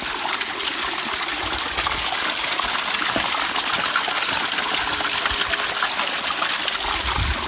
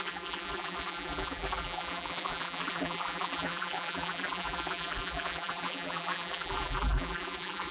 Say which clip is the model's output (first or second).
second